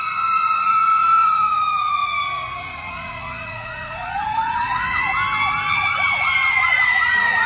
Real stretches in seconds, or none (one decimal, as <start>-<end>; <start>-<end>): 5.1-5.7